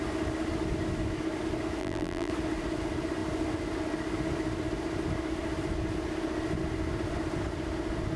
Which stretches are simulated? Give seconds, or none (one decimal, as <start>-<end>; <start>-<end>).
1.8-2.3